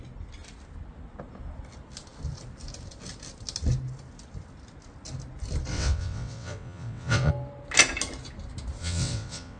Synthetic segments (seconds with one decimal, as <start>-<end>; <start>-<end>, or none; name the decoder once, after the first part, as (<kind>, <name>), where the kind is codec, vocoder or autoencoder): 5.7-7.3 (vocoder, WaveNeXt); 8.8-9.6